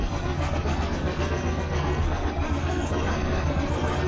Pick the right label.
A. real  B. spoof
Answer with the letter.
B